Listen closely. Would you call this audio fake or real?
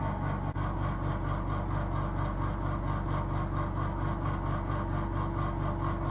real